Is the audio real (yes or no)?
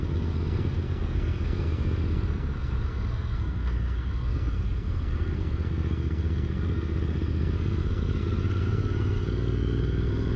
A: no